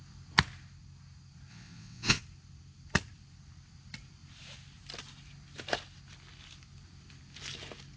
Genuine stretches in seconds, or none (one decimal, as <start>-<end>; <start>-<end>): 0.0-1.5; 2.2-8.0